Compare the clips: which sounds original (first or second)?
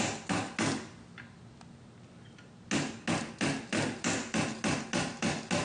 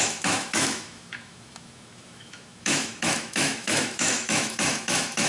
first